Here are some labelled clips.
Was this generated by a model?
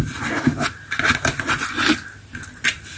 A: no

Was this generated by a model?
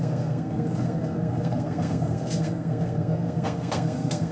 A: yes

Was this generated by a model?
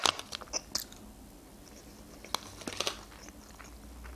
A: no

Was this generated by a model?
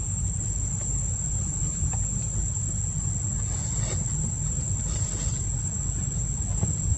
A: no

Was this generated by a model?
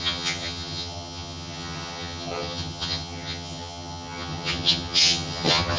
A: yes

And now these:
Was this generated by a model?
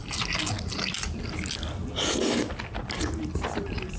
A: no